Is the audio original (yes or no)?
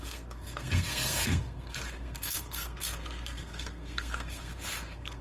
no